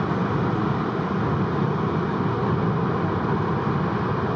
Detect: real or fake real